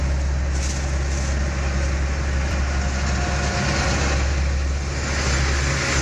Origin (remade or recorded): recorded